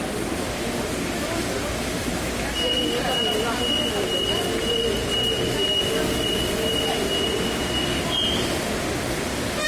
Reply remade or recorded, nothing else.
recorded